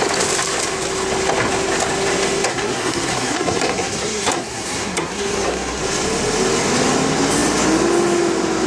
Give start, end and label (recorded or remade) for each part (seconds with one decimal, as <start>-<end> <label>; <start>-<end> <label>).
0.0-2.5 recorded; 2.5-5.8 remade; 5.8-8.7 recorded